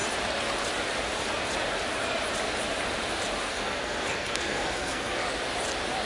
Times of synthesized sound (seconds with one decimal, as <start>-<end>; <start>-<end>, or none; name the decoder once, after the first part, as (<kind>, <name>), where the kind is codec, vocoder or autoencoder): 3.5-5.2 (codec, SNAC)